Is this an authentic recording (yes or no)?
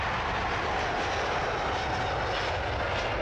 yes